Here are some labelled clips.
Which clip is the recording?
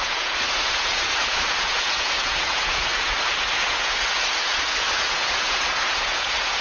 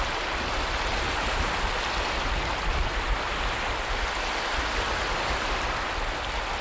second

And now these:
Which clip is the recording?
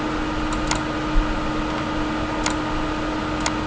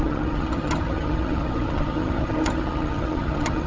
first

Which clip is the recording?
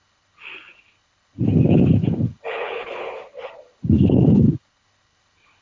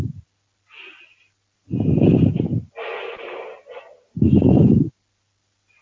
second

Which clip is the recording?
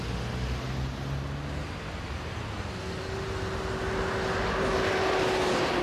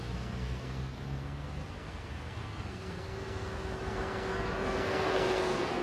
first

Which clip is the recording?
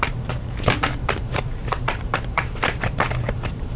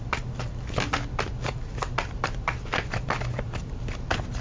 second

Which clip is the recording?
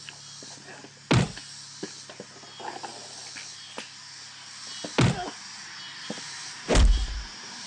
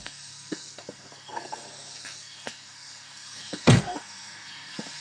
first